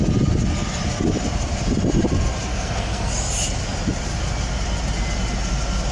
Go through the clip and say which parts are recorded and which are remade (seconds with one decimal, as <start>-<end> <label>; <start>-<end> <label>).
0.0-2.5 recorded; 2.5-3.1 remade; 3.1-5.9 recorded